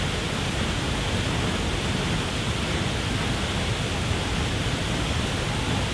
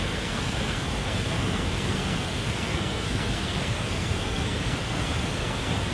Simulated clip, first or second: second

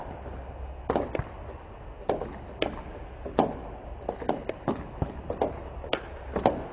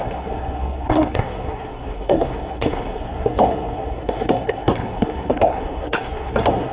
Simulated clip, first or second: second